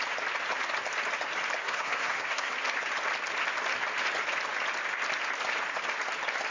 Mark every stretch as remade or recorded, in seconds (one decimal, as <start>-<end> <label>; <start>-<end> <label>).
0.0-1.6 recorded; 1.6-2.5 remade; 2.5-6.5 recorded